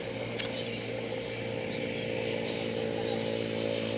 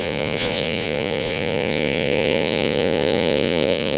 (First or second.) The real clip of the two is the first